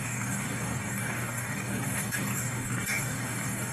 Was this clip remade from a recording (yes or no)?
yes